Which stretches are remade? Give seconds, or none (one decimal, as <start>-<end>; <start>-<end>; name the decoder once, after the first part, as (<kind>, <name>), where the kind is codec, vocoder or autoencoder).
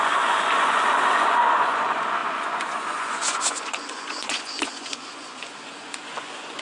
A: 0.0-6.6 (vocoder, Vocos)